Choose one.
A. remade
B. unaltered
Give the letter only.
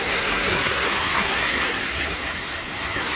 A